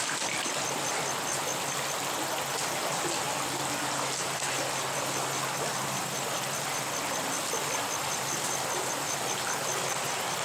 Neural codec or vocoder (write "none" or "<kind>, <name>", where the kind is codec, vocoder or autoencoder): none